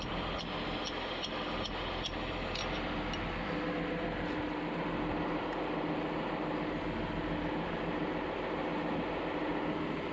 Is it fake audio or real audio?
real